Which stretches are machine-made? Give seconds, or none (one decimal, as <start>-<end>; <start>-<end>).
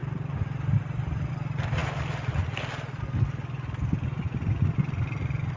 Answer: none